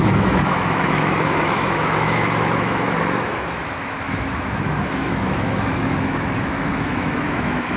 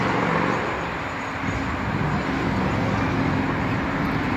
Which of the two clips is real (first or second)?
second